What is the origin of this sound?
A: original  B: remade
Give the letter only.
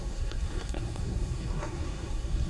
B